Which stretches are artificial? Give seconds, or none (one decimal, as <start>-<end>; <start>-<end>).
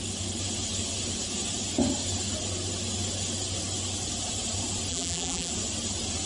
4.9-5.5